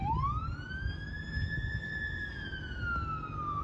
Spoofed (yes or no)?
no